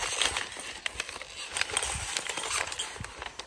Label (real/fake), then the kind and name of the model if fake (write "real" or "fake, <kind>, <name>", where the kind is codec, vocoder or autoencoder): real